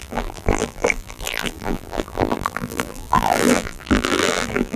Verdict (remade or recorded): remade